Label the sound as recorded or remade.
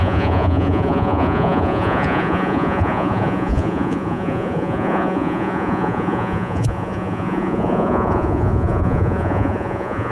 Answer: remade